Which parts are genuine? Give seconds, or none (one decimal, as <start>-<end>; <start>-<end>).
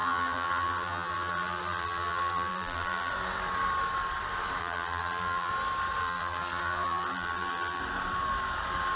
3.1-4.6; 5.5-6.0; 7.8-9.0